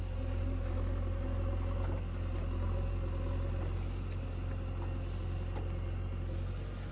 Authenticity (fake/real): real